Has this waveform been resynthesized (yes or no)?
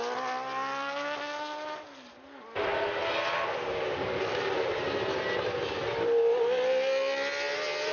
no